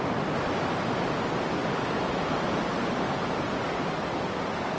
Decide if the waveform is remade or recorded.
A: recorded